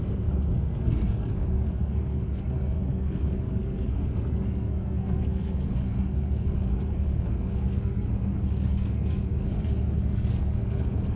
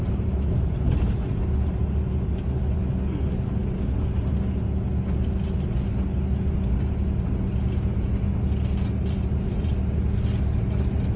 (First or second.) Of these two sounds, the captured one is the second